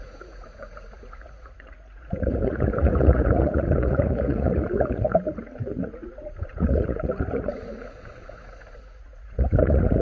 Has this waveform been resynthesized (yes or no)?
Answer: yes